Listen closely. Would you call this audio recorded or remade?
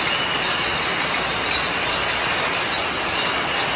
recorded